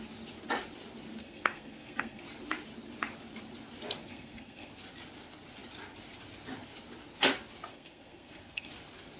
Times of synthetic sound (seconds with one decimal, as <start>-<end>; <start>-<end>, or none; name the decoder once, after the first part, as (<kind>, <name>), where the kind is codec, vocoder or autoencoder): 1.2-2.2 (codec, SNAC); 4.0-4.7; 7.7-8.7